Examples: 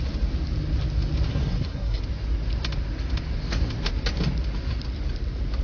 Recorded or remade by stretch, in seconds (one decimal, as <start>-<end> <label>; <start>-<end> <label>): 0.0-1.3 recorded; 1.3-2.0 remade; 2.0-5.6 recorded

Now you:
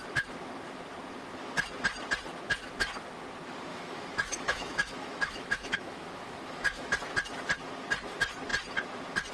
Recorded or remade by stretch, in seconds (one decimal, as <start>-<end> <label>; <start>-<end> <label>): 0.0-3.7 recorded; 3.7-7.0 remade; 7.0-9.3 recorded

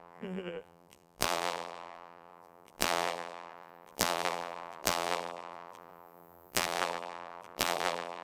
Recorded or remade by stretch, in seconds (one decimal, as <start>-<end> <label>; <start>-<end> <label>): 0.0-8.2 remade

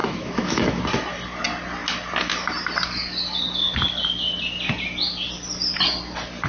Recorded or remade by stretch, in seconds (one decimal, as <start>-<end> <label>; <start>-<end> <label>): 0.0-0.8 remade; 0.8-6.5 recorded

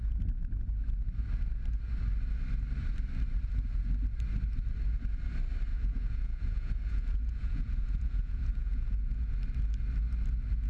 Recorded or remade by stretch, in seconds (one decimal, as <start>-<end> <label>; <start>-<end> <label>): 0.0-5.7 recorded; 5.7-9.3 remade; 9.3-10.7 recorded

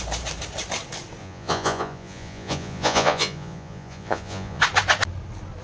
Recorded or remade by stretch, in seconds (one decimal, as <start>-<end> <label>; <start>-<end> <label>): 0.0-1.2 recorded; 1.2-4.6 remade; 4.6-5.6 recorded

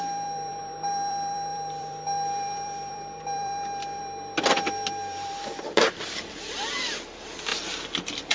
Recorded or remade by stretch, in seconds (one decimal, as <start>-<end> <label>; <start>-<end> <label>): 0.0-7.5 remade; 7.5-8.3 recorded

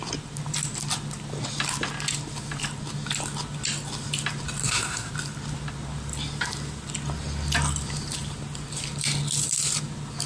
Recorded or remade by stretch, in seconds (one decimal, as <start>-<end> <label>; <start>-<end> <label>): 0.0-4.6 recorded; 4.6-5.1 remade; 5.1-10.3 recorded